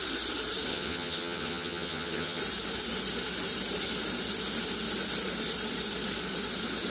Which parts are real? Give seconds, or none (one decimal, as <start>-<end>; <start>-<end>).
0.0-0.7; 2.4-6.9

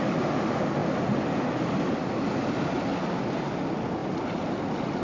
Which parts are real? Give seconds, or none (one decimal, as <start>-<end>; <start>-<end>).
0.0-5.0

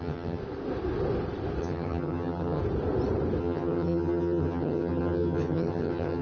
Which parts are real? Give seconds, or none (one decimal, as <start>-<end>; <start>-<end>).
0.4-1.6; 2.6-3.4

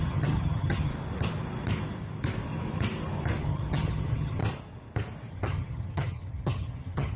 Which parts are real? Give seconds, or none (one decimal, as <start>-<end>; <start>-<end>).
0.9-3.4; 4.4-5.3

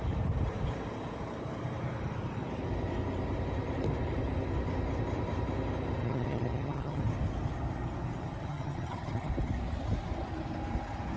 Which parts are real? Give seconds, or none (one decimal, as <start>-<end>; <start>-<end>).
0.0-6.0; 7.0-8.4; 9.3-11.2

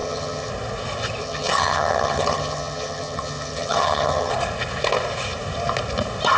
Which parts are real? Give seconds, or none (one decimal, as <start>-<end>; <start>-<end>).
0.5-1.2; 4.3-6.4

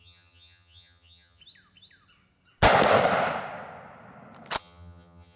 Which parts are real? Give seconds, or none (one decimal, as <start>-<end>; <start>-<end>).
1.4-4.6

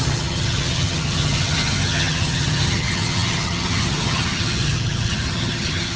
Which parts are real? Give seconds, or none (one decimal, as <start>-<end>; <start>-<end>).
none